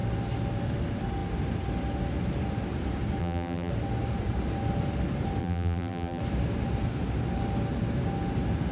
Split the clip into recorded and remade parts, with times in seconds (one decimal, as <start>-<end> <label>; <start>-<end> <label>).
0.0-3.2 recorded; 3.2-3.7 remade; 3.7-5.4 recorded; 5.4-6.2 remade; 6.2-8.7 recorded